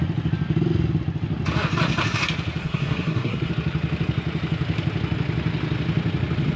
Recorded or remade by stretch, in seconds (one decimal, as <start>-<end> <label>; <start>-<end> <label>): 0.0-2.6 recorded; 2.6-3.5 remade; 3.5-6.6 recorded